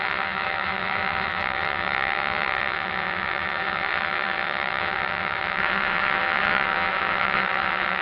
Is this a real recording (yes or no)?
no